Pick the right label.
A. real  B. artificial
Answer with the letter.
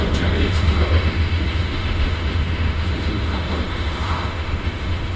B